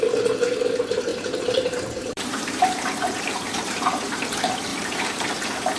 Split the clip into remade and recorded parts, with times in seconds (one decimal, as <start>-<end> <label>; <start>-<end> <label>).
0.0-1.1 recorded; 1.1-4.2 remade; 4.2-4.7 recorded; 4.7-5.3 remade; 5.3-5.8 recorded